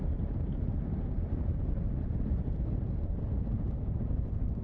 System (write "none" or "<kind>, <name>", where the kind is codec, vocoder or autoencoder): none